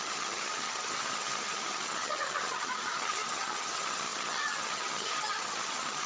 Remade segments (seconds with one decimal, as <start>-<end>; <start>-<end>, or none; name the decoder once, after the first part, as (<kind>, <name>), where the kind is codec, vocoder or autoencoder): 0.0-6.1 (vocoder, HiFi-GAN)